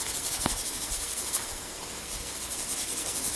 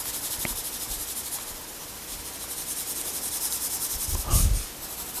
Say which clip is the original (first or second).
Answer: second